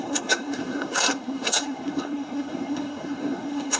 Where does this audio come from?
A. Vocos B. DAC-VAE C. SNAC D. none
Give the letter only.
C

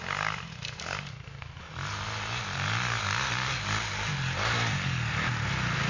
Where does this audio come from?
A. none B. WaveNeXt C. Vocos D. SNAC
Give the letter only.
A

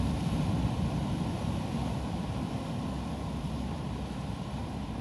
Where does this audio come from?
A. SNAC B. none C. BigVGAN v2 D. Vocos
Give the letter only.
C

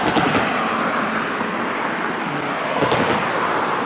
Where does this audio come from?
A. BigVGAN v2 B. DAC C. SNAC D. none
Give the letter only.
D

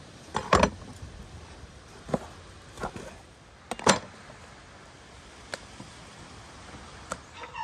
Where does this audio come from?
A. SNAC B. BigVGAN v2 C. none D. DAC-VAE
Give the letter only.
C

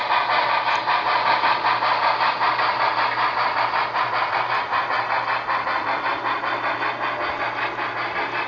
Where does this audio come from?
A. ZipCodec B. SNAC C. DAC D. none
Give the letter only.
D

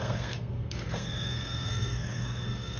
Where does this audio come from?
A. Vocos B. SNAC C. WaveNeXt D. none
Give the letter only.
B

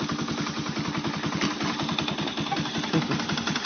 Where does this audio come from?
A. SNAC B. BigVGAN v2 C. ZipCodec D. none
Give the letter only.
D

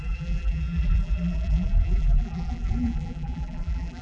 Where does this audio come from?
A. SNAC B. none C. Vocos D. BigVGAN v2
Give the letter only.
D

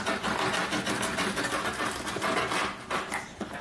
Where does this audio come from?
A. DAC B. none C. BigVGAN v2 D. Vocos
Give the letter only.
B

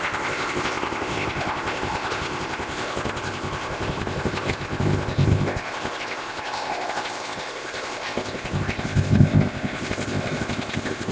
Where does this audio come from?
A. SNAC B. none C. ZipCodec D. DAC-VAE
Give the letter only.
C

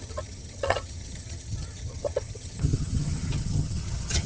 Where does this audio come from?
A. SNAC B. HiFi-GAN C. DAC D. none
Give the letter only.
B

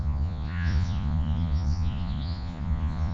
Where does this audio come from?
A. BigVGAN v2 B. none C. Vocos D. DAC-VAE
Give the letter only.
C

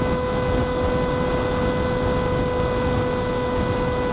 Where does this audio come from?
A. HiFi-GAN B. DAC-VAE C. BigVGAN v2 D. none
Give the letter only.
D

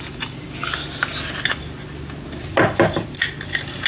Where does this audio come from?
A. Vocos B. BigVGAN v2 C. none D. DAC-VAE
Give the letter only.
C